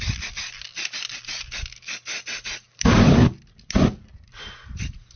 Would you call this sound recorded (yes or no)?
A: yes